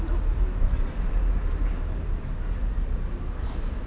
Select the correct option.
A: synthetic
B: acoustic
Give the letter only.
B